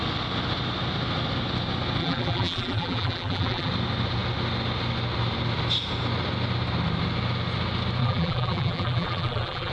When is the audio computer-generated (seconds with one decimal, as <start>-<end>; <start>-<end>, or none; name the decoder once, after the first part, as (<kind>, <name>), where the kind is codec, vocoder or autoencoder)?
2.0-3.7 (vocoder, BigVGAN v2); 8.0-9.7